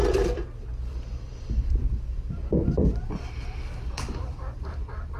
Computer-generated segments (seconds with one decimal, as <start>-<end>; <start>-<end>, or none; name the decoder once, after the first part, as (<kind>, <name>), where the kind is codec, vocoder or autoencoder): 0.0-3.1 (vocoder, BigVGAN v2); 4.2-4.7